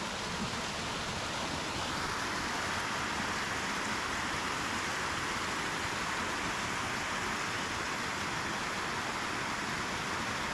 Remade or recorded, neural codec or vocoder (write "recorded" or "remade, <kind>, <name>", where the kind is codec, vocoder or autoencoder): recorded